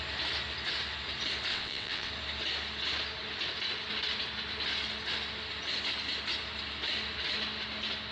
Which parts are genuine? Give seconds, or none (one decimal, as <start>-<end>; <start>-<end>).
0.0-1.5; 2.1-8.1

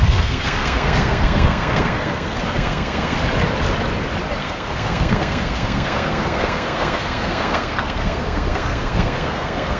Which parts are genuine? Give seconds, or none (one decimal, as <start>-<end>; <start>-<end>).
3.2-4.4

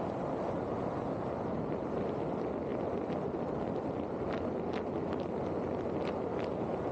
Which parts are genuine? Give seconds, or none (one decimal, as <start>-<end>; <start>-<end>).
0.0-6.9

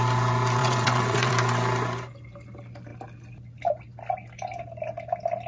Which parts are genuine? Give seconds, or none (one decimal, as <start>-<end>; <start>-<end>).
0.0-0.6; 1.3-5.5

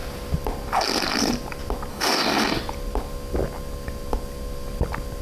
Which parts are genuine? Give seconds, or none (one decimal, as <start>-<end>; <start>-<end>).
0.0-1.9; 2.6-5.2

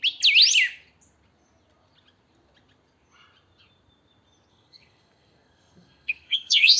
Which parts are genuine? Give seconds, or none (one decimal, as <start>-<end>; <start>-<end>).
0.0-4.5

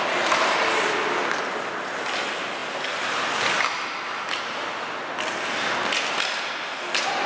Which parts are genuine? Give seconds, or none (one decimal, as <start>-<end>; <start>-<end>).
0.0-7.3

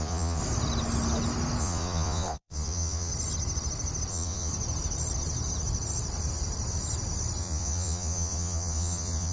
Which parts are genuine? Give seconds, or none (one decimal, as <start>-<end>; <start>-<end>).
0.4-1.6; 3.1-4.1; 4.5-7.4